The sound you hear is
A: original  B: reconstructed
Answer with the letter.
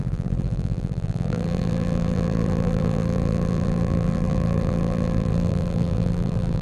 B